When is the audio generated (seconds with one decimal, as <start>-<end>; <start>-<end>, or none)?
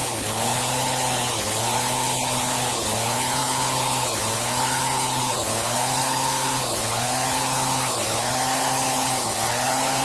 0.0-10.0